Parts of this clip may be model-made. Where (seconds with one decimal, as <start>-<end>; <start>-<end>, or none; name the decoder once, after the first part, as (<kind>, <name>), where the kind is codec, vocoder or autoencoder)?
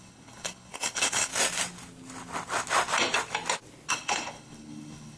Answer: 0.0-1.3 (codec, HILCodec); 3.9-5.2